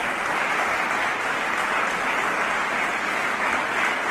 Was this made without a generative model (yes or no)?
yes